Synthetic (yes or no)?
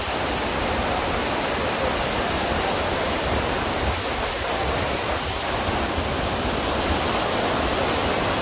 no